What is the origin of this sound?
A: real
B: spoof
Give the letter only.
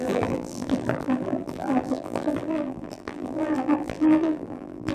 B